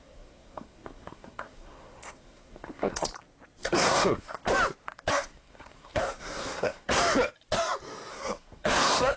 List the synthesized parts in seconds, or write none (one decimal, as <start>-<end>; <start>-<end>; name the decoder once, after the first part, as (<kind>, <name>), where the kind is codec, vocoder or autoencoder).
0.0-3.1 (codec, SNAC); 3.6-4.4; 5.1-7.0; 8.1-9.2